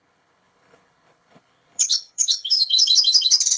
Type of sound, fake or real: fake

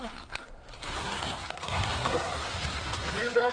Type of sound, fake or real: fake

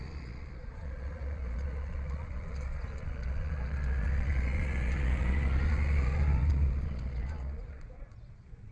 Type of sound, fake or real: fake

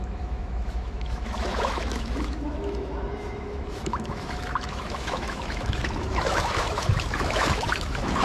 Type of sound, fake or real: fake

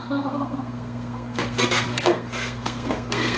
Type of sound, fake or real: fake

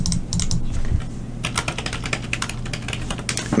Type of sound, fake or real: real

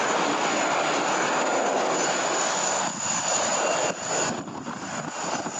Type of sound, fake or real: real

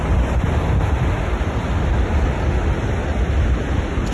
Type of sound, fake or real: real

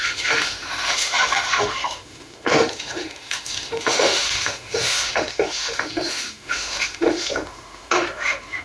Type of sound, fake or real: fake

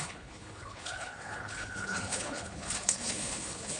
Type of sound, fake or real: fake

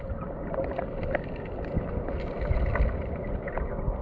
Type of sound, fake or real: real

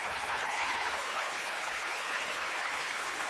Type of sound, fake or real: fake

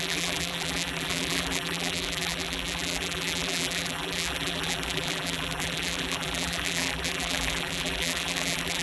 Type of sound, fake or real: fake